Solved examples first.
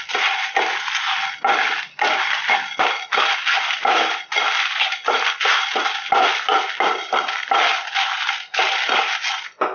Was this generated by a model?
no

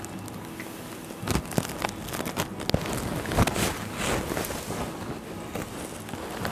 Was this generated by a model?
no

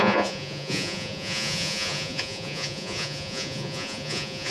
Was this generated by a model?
yes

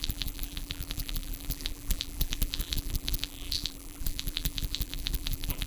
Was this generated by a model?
yes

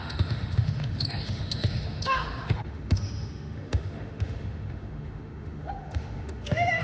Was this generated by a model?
yes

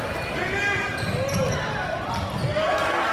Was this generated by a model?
no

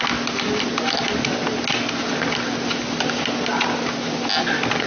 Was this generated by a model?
no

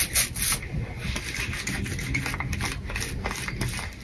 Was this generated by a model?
no